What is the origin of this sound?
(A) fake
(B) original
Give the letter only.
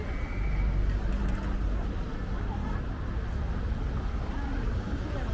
B